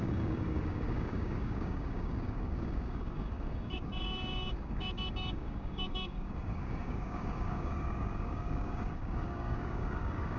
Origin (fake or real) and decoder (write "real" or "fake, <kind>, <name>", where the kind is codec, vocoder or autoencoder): fake, codec, DAC